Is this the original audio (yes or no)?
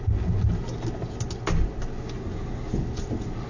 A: yes